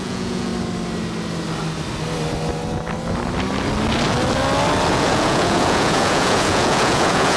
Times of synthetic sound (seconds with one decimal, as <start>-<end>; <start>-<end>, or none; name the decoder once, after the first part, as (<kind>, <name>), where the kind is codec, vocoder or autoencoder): 0.0-0.5 (vocoder, Vocos); 4.9-7.4